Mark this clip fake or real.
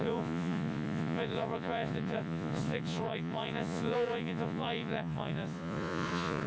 fake